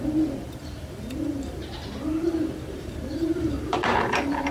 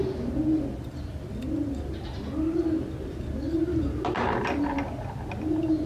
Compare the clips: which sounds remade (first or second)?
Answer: first